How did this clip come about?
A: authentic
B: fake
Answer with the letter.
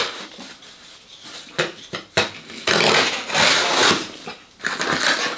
A